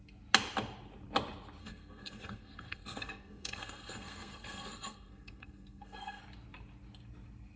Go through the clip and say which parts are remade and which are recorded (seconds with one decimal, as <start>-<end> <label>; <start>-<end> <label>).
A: 0.0-1.6 recorded; 1.6-6.2 remade; 6.2-7.6 recorded